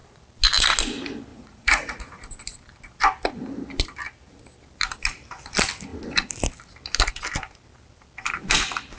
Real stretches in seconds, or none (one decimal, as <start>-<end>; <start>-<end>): 0.0-1.3; 2.2-9.0